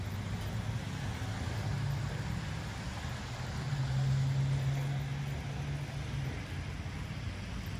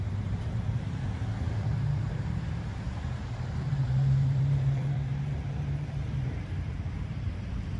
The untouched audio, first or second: first